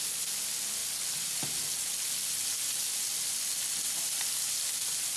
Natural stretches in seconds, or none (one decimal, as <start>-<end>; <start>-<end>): 0.0-5.2

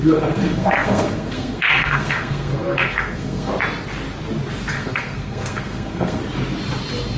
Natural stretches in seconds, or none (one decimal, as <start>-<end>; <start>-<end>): 3.5-4.7; 6.2-7.2